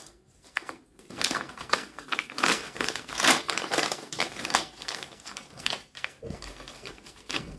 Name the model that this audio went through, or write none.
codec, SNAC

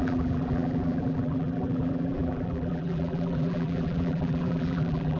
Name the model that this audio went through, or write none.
vocoder, BigVGAN v2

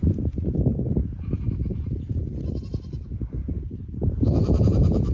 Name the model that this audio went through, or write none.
vocoder, BigVGAN v2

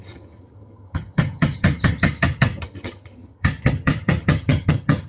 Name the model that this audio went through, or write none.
vocoder, HiFi-GAN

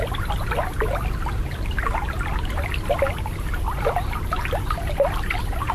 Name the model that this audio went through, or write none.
none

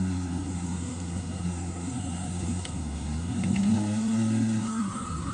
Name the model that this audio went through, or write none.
codec, SNAC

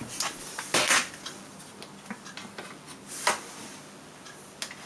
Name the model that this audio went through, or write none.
none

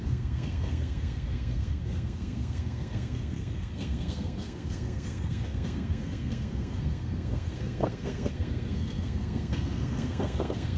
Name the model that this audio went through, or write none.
codec, SNAC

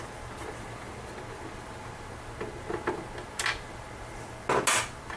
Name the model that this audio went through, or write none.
none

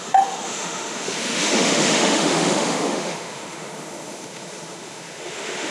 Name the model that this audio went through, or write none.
autoencoder, DAC-VAE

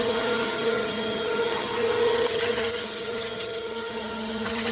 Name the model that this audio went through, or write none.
vocoder, HiFi-GAN